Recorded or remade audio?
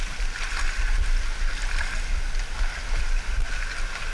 recorded